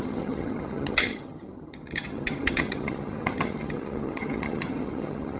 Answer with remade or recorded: remade